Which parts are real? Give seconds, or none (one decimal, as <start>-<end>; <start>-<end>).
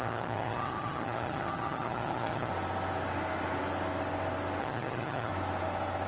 2.5-4.6; 5.3-6.1